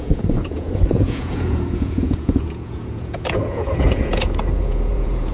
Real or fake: fake